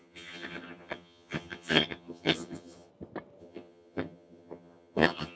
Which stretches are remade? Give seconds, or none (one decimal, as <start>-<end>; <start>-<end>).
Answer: 0.0-2.9; 3.4-5.4